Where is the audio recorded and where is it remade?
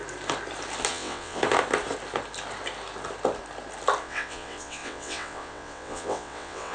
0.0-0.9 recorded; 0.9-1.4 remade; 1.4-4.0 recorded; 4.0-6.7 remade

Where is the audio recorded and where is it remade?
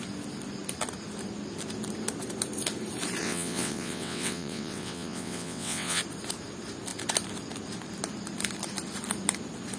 0.0-3.2 recorded; 3.2-6.0 remade; 6.0-9.8 recorded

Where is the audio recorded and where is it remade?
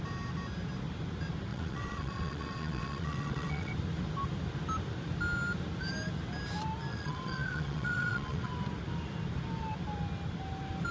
0.0-1.5 recorded; 1.5-3.7 remade; 3.7-6.9 recorded; 6.9-8.5 remade; 8.5-10.9 recorded